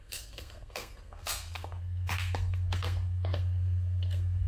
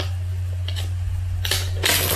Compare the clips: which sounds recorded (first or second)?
second